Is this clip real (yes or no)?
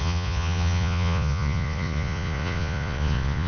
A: no